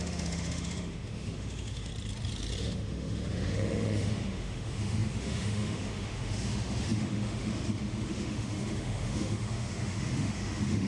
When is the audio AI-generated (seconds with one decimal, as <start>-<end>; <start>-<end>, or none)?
0.0-1.9; 2.6-10.9